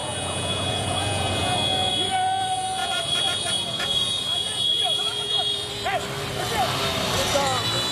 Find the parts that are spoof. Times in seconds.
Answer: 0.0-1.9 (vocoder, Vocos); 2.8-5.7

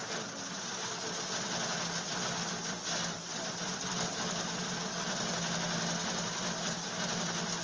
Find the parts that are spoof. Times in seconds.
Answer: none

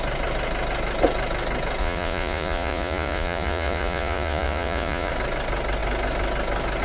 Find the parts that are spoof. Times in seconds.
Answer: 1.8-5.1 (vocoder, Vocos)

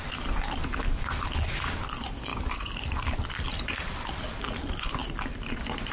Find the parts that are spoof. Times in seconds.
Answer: 2.3-4.4 (vocoder, BigVGAN v2); 5.0-5.5

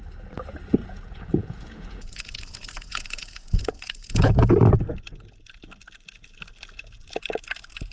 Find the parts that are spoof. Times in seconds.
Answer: 0.8-4.5 (vocoder, Vocos)

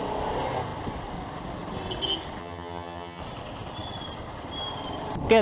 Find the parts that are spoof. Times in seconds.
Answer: 2.4-3.2 (vocoder, HiFi-GAN)